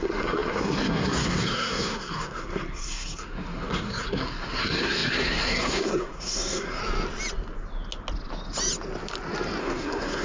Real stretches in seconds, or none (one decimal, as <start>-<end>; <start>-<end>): 6.8-9.6